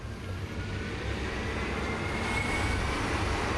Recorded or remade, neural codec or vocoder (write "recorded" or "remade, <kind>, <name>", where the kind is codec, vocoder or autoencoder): recorded